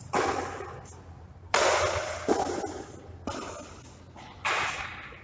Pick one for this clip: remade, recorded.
recorded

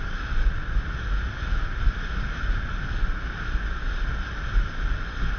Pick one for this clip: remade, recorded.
recorded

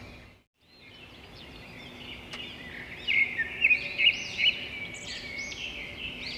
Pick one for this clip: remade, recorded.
recorded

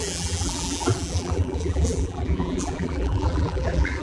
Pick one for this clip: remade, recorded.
remade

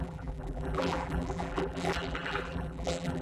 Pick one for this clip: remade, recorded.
remade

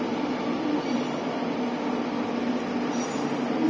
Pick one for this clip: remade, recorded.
recorded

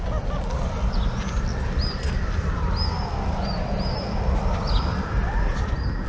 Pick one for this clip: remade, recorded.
recorded